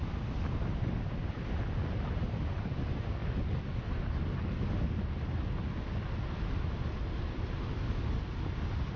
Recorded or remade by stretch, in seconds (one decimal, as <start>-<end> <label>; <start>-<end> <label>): 0.0-9.0 recorded